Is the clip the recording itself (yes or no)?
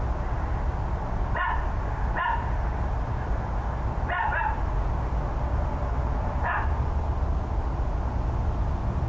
yes